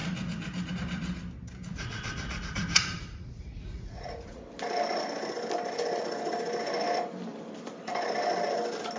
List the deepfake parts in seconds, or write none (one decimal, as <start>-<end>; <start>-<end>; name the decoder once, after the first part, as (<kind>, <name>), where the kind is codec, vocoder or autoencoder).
1.7-4.4 (vocoder, Vocos)